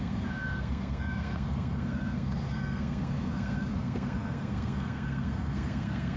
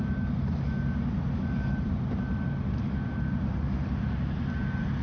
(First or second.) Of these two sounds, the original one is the second